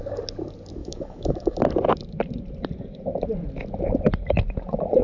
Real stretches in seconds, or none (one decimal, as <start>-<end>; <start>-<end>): 0.0-0.8; 1.6-5.0